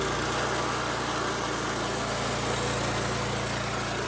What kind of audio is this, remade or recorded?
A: recorded